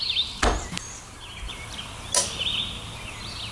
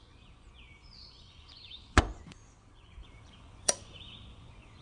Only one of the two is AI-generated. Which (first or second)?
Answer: second